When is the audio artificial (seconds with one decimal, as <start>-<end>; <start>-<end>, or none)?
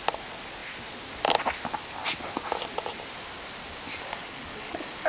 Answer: 3.9-5.1